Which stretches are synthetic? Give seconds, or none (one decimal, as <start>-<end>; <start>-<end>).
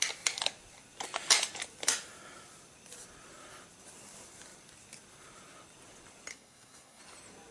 6.3-7.0